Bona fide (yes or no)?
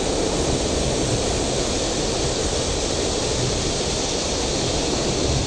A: yes